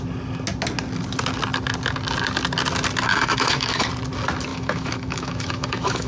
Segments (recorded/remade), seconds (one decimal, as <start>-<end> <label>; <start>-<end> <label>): 0.0-3.1 recorded; 3.1-3.9 remade; 3.9-4.5 recorded; 4.5-6.1 remade